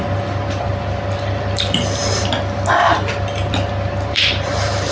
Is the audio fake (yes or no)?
yes